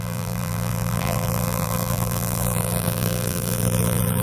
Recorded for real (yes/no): no